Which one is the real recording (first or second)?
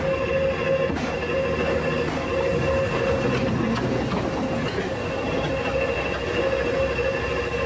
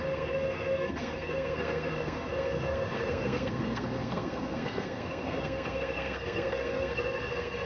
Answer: first